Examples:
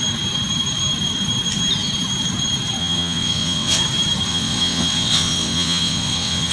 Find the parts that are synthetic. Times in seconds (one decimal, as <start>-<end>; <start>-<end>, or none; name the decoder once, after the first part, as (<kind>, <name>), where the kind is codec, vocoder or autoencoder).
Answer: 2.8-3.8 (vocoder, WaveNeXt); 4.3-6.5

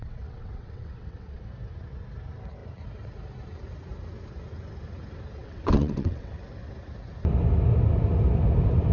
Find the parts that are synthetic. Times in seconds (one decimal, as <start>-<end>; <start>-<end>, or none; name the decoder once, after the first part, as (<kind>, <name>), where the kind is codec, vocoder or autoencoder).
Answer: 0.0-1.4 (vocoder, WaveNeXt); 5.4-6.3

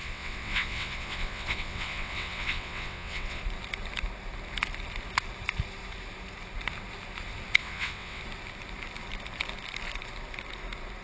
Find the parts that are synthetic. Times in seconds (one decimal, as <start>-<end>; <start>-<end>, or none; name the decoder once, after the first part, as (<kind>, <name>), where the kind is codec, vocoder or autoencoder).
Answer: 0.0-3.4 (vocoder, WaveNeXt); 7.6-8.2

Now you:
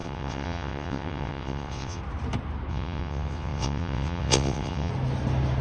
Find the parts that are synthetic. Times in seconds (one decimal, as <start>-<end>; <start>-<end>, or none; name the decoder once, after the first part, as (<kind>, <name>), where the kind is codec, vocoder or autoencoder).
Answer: 0.0-2.0 (vocoder, WaveNeXt); 2.7-4.9

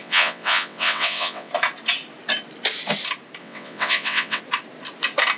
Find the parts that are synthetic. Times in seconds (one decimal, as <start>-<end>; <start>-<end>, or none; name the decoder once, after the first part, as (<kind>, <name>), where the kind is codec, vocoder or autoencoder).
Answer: 0.0-1.5 (vocoder, WaveNeXt); 3.4-4.4